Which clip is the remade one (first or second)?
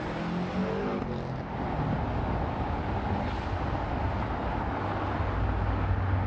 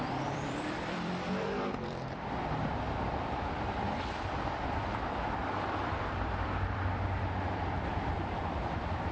second